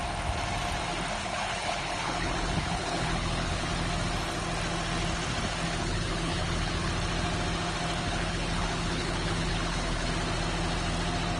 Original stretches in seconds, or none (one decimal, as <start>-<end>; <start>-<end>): 0.0-1.2; 3.7-5.8; 6.9-8.0; 10.1-11.4